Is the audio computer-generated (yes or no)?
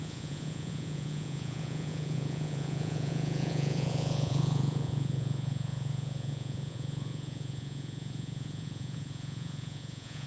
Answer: yes